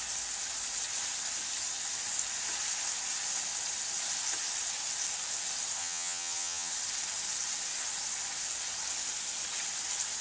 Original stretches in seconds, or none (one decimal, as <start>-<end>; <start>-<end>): 0.0-5.8; 6.7-10.2